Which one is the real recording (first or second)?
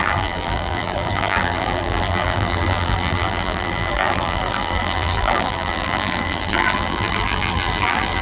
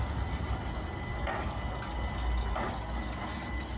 second